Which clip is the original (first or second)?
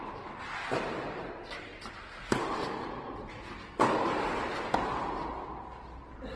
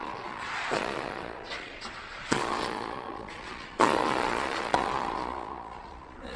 first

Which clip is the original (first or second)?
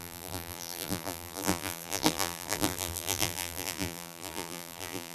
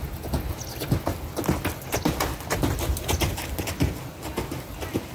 second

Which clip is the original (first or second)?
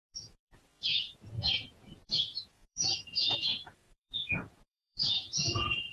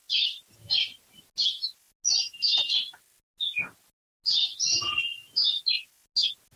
second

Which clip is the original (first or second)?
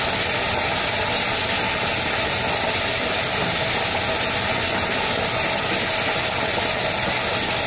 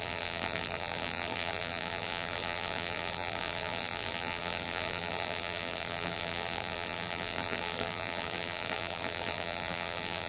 first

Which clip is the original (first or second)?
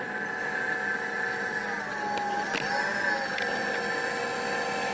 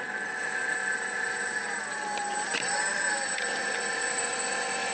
first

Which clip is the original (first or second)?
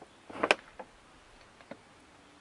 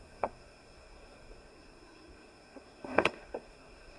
first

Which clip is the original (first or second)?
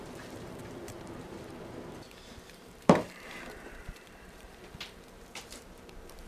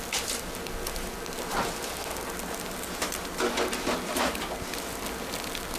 second